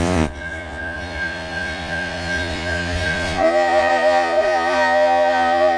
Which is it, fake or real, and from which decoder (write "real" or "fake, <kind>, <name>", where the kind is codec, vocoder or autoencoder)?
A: fake, vocoder, Vocos